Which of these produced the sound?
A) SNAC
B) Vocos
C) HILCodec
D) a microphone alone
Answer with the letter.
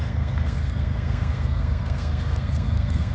A